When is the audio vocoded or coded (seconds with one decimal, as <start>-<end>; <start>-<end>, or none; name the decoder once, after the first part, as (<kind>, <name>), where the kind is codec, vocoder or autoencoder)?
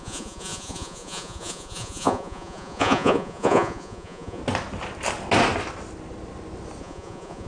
0.0-4.4 (vocoder, Vocos); 6.8-7.5